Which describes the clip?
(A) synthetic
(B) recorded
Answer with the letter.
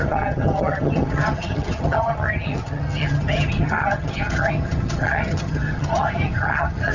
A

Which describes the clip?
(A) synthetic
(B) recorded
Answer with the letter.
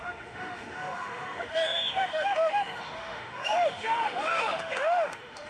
A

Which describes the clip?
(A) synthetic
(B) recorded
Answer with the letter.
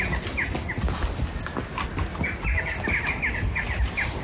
B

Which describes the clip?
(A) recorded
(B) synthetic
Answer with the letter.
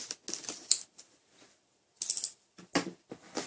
A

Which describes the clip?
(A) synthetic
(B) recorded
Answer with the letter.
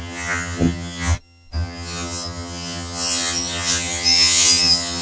A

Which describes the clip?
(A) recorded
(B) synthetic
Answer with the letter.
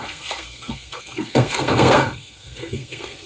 B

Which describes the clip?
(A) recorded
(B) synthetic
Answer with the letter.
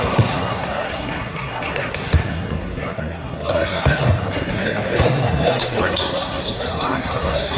B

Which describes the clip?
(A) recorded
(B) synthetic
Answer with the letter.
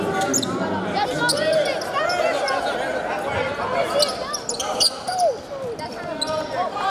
A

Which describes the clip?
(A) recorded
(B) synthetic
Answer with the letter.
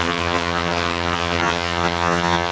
B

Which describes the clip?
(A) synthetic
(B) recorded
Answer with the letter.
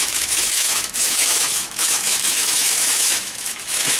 A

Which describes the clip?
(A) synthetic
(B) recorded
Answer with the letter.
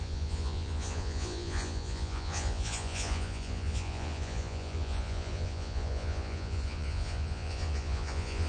A